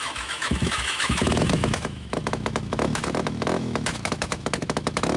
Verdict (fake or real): fake